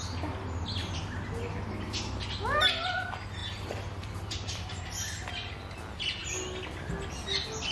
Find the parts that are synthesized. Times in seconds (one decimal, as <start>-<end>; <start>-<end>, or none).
3.4-4.8